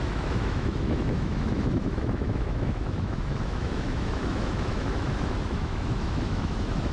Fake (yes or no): yes